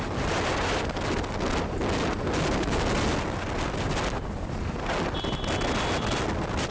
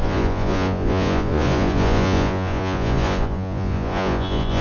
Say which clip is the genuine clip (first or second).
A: first